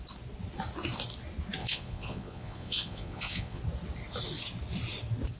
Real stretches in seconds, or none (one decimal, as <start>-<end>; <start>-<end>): 0.0-1.6; 3.6-5.4